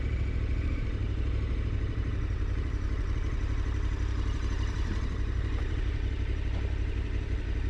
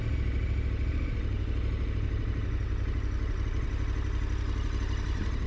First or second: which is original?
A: second